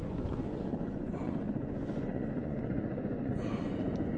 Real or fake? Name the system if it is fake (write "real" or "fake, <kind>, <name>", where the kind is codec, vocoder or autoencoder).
fake, vocoder, Vocos